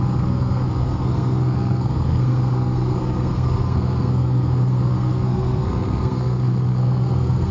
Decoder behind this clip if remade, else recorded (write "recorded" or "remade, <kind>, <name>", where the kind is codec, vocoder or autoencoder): remade, codec, SNAC